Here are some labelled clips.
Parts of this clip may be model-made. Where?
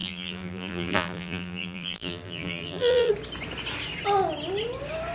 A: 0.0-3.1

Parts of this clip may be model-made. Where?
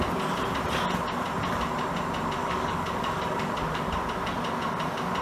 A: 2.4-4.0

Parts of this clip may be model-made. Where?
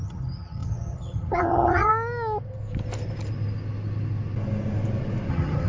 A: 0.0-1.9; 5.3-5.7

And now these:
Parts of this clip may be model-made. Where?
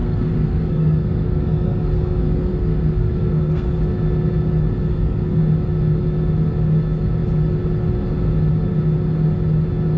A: 0.0-3.8; 4.9-5.4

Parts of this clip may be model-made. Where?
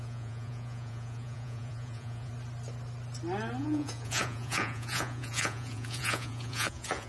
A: 0.0-2.3; 3.6-7.1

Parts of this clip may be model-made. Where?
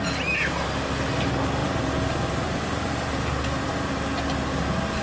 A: 1.6-3.9